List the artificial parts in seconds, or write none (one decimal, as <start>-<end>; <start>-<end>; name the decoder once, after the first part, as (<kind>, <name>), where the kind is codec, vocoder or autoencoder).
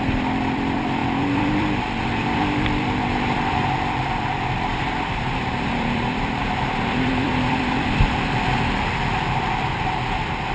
0.0-10.5 (vocoder, BigVGAN v2)